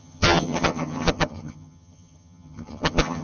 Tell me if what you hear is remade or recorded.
remade